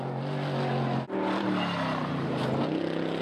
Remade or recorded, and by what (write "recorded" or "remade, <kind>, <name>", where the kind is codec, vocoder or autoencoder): recorded